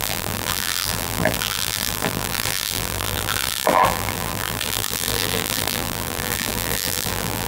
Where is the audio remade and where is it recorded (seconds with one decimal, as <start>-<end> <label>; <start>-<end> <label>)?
0.0-7.5 remade